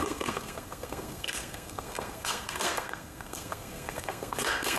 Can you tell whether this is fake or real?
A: fake